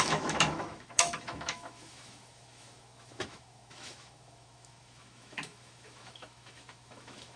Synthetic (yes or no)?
yes